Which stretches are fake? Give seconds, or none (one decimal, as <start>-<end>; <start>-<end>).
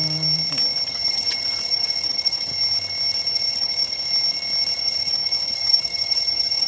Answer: 0.9-2.5; 3.3-4.0; 4.8-6.7